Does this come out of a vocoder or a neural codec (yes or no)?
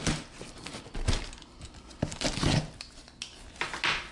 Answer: no